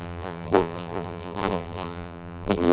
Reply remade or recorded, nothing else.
remade